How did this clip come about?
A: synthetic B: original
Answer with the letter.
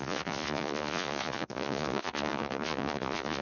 A